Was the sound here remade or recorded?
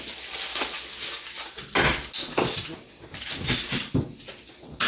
recorded